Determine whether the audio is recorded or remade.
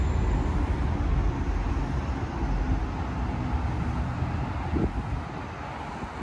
recorded